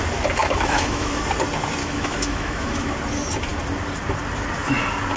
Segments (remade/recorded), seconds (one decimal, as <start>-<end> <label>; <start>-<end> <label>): 0.0-0.4 recorded; 0.4-1.2 remade; 1.2-1.8 recorded; 1.8-2.9 remade; 2.9-5.2 recorded